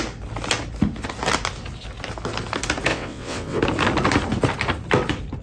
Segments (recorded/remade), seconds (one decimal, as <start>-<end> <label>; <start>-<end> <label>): 0.0-2.9 recorded; 2.9-3.6 remade; 3.6-5.4 recorded